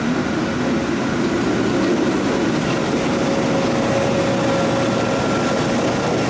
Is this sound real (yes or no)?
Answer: yes